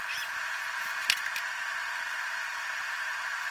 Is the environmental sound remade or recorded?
recorded